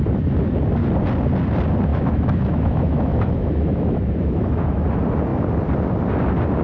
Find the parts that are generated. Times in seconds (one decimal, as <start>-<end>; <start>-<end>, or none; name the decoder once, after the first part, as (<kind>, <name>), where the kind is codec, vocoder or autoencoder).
1.9-4.8 (autoencoder, DAC-VAE)